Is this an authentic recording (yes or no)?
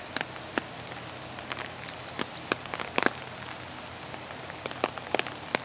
yes